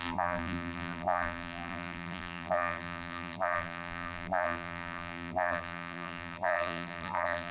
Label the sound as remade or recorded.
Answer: remade